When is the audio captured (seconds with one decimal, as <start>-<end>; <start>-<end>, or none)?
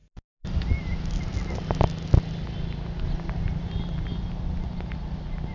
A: 0.0-5.5